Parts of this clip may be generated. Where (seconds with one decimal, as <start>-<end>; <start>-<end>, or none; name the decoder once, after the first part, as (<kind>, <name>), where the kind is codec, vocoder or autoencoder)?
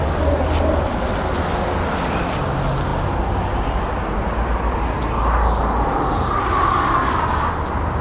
none